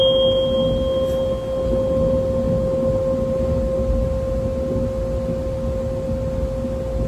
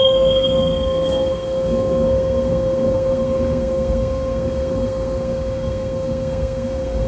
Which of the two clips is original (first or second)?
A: first